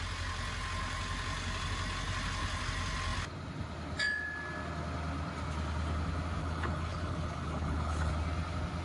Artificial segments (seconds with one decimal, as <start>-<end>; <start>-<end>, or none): 6.4-8.1